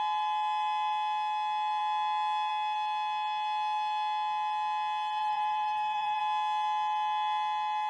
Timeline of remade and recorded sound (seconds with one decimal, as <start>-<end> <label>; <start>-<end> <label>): 0.0-5.2 recorded; 5.2-6.2 remade; 6.2-7.9 recorded